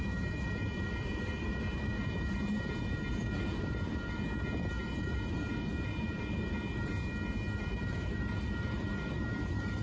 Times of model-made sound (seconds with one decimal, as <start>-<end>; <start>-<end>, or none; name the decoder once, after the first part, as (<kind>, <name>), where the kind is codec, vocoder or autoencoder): 0.0-6.9 (vocoder, BigVGAN v2); 7.6-9.8